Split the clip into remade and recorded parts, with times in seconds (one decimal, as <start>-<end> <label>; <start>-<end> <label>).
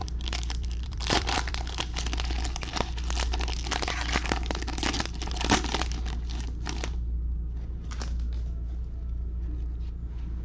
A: 0.0-1.6 remade; 1.6-10.4 recorded